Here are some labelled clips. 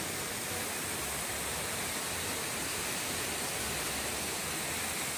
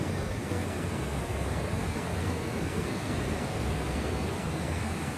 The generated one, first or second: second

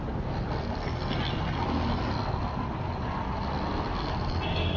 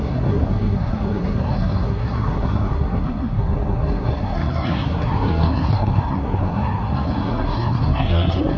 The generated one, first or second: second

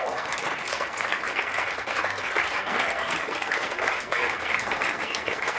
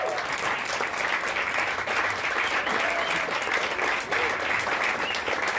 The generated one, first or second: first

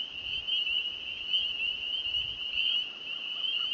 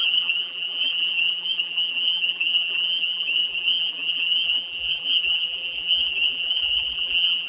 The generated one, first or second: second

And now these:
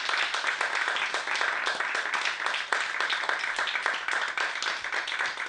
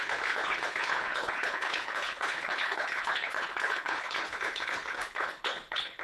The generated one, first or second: second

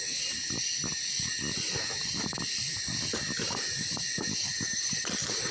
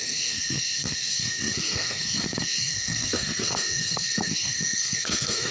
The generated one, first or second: second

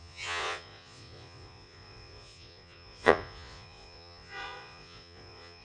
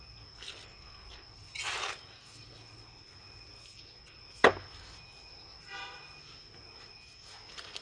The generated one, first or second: first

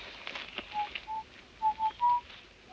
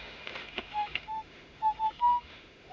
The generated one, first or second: second